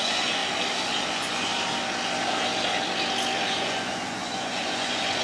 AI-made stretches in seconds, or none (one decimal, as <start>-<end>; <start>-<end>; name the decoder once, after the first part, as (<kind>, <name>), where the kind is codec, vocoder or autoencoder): 0.0-0.4 (vocoder, Vocos); 1.1-1.5; 3.5-5.2